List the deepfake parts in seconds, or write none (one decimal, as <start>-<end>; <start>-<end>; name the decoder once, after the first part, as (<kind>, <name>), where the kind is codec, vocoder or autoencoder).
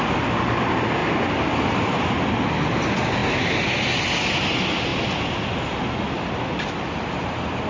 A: 1.0-1.5 (vocoder, BigVGAN v2)